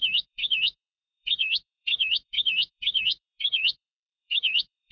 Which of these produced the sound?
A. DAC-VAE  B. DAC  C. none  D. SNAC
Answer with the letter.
D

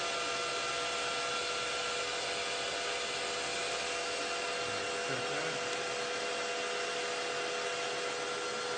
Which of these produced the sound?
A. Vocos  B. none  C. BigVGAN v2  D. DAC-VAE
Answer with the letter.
B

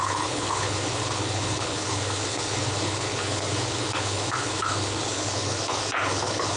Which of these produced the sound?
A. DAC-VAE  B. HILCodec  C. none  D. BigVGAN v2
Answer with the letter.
B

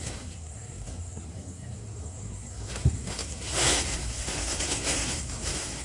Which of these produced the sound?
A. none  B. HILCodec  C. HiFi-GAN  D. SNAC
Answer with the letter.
D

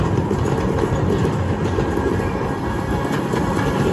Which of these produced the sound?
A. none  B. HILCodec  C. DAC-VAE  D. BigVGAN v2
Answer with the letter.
A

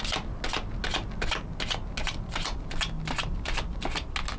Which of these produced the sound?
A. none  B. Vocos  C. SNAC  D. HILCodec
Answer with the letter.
A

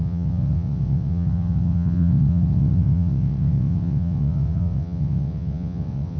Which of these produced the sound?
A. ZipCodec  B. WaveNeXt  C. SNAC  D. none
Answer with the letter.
B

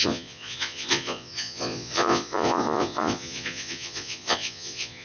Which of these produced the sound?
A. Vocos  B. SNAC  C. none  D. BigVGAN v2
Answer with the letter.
A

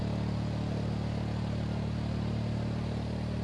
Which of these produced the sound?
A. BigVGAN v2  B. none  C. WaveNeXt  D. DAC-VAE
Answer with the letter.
B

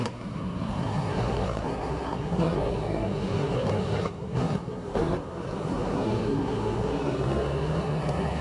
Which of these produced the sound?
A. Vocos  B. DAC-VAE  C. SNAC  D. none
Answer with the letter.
C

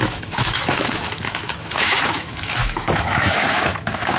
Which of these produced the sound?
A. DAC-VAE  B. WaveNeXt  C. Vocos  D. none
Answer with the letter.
A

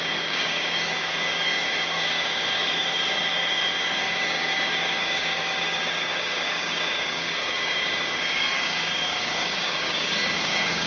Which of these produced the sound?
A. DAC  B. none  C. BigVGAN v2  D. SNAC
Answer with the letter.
A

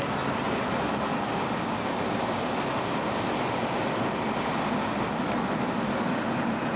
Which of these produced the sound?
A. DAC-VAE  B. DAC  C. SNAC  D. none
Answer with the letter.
D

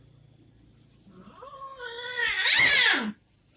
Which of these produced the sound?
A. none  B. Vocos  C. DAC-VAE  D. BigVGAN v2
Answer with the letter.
A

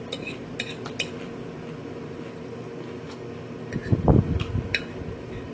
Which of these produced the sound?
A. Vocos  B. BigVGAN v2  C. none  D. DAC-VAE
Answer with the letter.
C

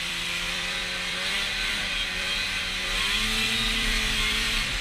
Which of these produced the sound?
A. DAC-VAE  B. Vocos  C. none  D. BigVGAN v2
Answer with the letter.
D